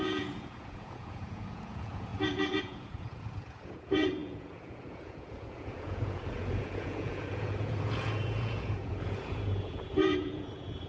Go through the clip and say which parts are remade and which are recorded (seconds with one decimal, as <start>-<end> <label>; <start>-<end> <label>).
0.0-10.9 remade